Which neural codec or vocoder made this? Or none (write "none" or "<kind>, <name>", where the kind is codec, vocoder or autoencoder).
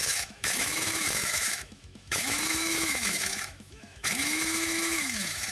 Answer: autoencoder, DAC-VAE